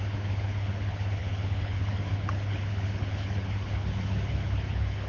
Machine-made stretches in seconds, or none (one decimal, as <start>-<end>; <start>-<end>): 0.0-5.1

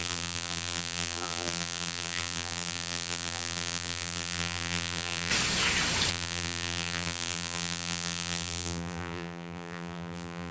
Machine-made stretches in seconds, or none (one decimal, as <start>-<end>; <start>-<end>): 0.0-5.3; 6.1-10.5

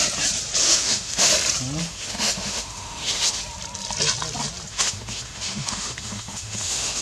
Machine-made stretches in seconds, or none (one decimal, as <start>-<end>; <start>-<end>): 0.6-1.3; 1.8-3.4; 4.7-7.0